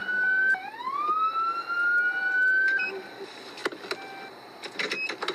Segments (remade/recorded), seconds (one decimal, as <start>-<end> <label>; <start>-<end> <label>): 0.0-5.3 recorded